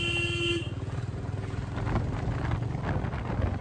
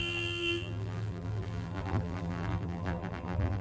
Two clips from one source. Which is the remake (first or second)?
second